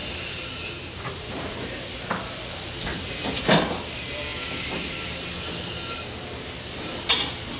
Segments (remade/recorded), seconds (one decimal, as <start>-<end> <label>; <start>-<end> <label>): 0.0-7.6 recorded